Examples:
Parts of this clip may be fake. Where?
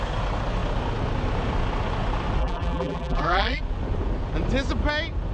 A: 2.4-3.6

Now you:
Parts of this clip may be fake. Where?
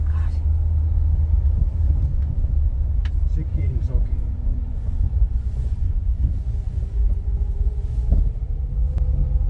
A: 2.1-2.9; 3.5-7.9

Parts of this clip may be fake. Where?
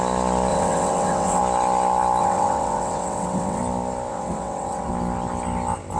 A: 0.5-1.4; 2.2-3.6; 4.1-4.9